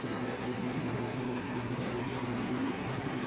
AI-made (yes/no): yes